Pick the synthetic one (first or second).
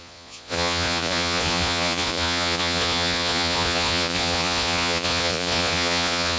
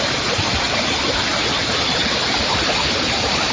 first